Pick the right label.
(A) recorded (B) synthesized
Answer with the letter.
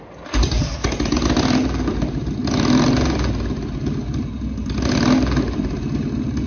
A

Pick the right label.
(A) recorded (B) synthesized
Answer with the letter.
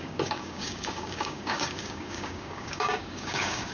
B